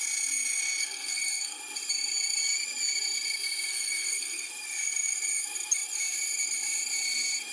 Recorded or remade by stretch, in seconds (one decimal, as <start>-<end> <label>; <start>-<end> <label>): 0.0-0.8 recorded; 0.8-1.6 remade; 1.6-3.7 recorded; 3.7-4.5 remade; 4.5-7.5 recorded